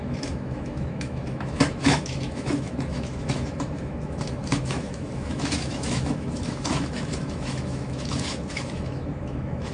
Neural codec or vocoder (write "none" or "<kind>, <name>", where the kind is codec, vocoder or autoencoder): autoencoder, DAC-VAE